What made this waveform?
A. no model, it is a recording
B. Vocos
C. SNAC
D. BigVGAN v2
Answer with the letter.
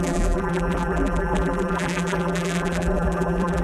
D